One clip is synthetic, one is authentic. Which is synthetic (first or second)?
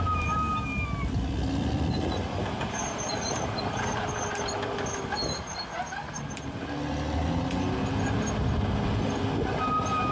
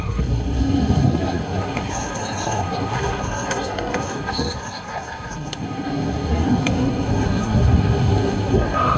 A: second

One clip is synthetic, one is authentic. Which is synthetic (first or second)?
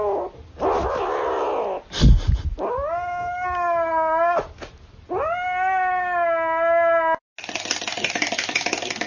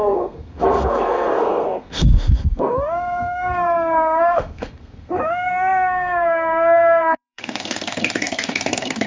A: second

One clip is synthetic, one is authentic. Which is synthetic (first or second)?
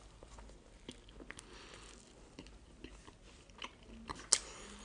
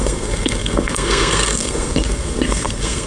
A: second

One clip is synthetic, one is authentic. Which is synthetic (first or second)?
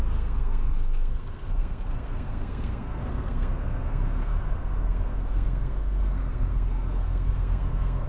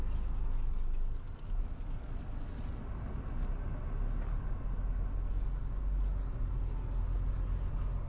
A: first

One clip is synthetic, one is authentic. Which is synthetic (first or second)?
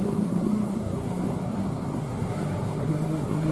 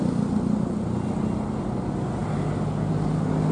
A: first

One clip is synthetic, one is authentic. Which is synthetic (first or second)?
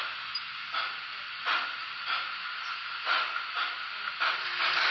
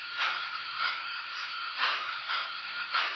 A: second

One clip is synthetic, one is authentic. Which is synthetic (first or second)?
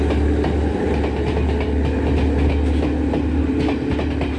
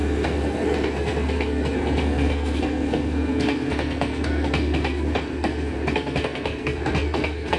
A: second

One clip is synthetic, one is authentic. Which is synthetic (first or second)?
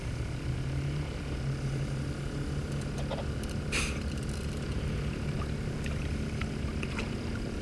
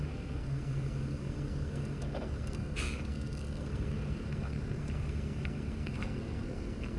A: second